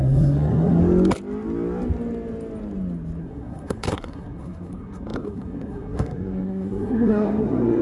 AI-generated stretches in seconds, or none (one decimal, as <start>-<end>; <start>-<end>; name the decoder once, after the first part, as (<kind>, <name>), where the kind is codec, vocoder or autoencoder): 0.0-0.8 (codec, SNAC); 3.2-7.8